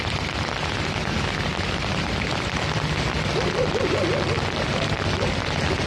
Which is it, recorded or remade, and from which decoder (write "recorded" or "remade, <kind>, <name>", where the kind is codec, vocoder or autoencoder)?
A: recorded